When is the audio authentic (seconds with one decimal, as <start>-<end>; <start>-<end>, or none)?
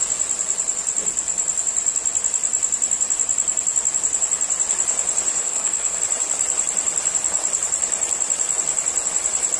0.0-5.4; 6.0-9.6